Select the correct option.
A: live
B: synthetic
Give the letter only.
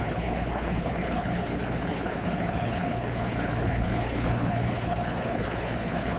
B